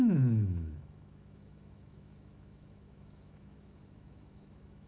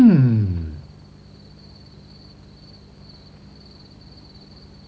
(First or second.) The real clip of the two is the second